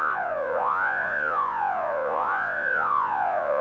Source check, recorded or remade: remade